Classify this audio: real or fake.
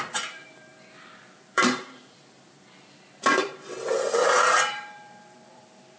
fake